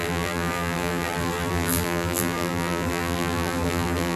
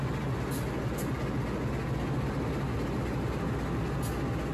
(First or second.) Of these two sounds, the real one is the second